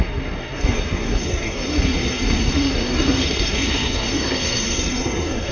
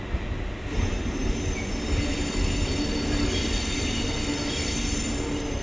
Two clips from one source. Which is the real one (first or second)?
second